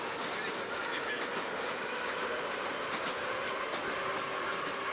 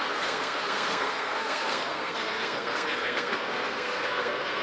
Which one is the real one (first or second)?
first